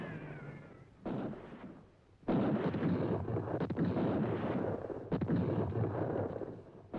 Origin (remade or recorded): recorded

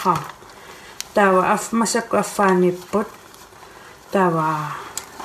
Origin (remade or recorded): recorded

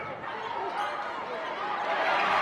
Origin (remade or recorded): recorded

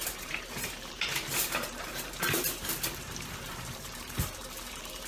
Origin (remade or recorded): remade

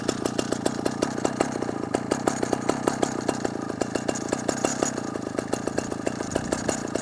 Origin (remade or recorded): recorded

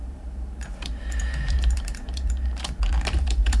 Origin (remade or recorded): remade